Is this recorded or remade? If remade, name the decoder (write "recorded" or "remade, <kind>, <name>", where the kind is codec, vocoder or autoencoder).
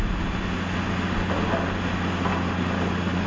recorded